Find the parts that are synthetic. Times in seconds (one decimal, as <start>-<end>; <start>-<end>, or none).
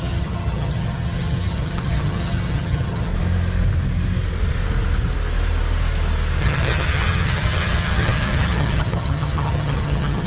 0.0-3.1; 6.4-10.3